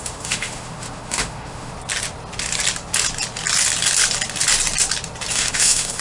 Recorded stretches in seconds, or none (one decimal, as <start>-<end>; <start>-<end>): 1.7-5.3